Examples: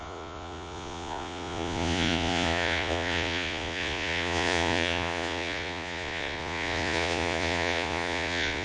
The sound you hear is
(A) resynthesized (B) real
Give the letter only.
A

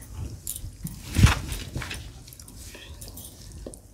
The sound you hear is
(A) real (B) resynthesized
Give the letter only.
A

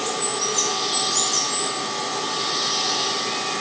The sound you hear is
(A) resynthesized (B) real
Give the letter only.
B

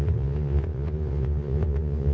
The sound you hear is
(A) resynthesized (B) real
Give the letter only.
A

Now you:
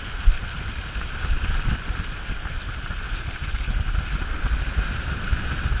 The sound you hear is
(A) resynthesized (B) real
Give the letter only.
B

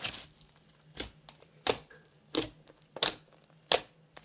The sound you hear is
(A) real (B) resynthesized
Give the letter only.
A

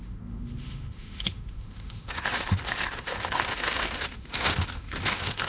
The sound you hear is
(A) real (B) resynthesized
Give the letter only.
B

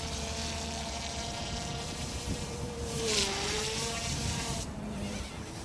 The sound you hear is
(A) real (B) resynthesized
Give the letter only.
B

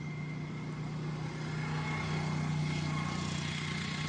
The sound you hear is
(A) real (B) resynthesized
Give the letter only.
A